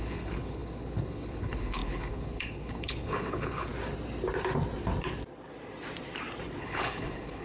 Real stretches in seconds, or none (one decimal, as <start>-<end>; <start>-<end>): 3.7-6.6